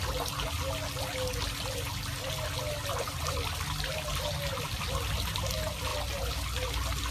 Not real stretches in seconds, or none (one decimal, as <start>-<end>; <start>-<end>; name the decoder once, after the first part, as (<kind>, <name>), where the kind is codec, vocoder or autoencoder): none